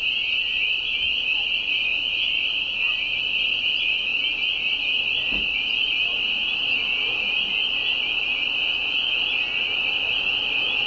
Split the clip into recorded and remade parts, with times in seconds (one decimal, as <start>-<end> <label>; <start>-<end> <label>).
0.0-10.9 recorded